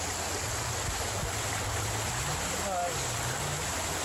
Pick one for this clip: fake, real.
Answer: real